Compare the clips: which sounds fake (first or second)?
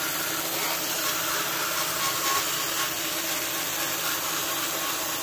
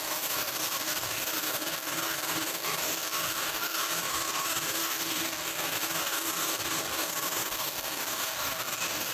second